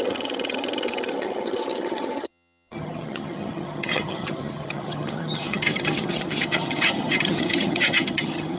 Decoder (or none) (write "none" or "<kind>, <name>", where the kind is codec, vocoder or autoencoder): vocoder, HiFi-GAN